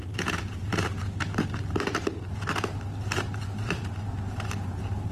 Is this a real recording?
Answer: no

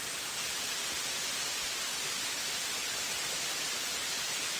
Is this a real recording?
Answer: yes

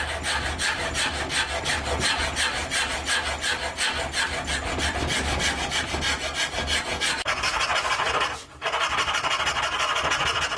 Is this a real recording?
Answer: yes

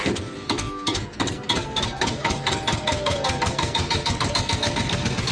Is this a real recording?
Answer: no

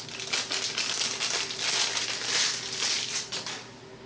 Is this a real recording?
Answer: yes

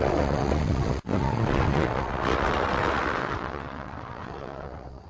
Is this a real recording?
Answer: no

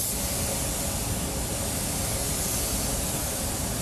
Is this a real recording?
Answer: yes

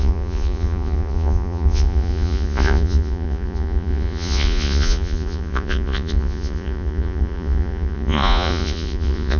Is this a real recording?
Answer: no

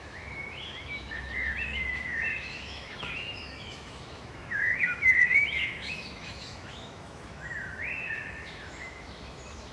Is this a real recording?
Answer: no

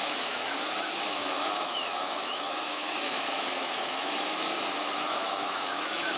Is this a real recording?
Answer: no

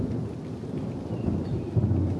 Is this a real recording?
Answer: yes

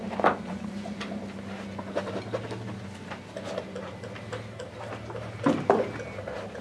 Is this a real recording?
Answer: yes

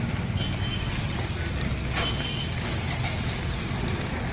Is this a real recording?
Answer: yes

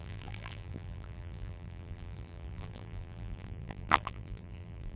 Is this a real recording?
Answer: no